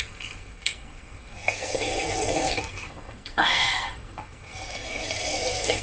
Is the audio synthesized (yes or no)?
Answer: yes